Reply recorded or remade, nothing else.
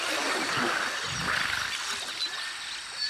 recorded